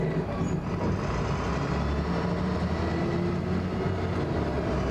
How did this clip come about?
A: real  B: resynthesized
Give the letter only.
A